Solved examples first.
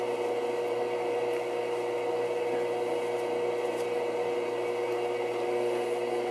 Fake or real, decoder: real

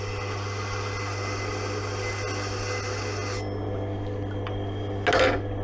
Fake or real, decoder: real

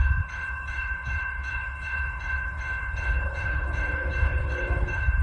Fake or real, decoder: fake, codec, HILCodec